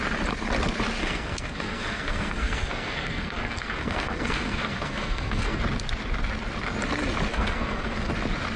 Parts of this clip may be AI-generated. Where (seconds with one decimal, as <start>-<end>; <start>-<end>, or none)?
1.0-5.6; 7.3-8.1